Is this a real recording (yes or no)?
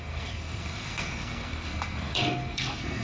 no